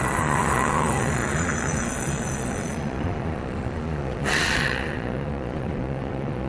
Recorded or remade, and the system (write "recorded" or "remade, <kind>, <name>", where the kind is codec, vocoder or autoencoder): remade, vocoder, Vocos